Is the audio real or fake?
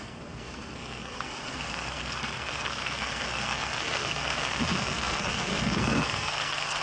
fake